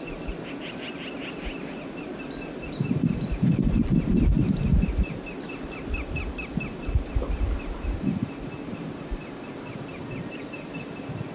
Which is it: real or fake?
real